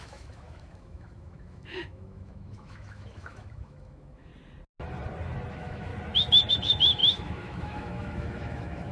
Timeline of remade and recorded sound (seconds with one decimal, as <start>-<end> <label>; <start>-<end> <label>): 0.0-4.3 remade; 4.3-5.5 recorded; 5.5-5.9 remade; 5.9-6.5 recorded; 6.5-8.9 remade